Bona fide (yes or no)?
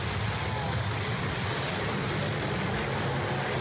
yes